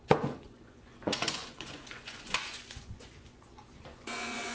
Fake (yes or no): yes